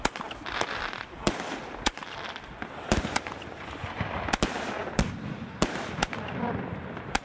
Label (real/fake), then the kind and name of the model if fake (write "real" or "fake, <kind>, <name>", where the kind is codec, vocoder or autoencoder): fake, vocoder, BigVGAN v2